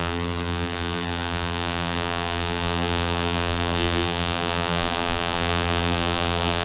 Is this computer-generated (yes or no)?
yes